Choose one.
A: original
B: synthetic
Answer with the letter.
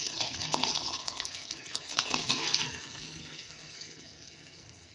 B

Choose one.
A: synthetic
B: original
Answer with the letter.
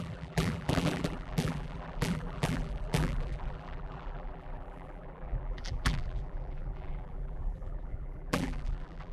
A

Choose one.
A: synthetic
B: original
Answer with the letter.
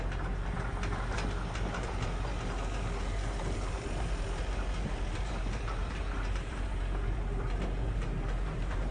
A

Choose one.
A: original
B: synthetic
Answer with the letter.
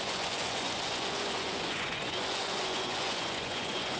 B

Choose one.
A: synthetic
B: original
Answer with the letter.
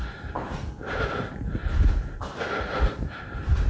B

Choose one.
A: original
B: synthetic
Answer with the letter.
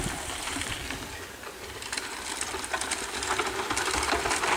A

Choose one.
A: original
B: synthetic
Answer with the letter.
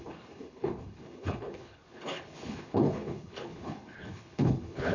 B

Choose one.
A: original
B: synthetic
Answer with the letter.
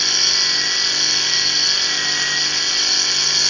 A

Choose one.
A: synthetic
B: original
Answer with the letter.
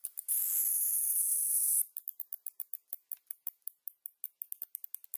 B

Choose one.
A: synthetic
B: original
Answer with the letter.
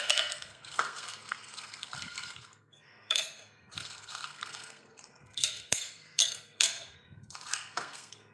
A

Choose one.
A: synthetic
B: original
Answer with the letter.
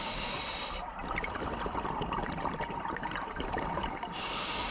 A